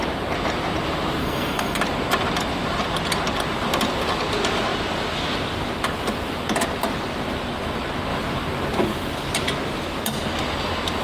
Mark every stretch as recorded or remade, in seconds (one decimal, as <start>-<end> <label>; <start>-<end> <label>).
0.0-1.2 recorded; 1.2-1.8 remade; 1.8-11.0 recorded